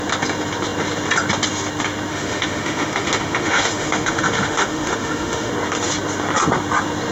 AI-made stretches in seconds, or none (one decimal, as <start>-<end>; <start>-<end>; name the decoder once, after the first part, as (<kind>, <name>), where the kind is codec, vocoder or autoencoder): 2.1-5.5 (autoencoder, DAC-VAE)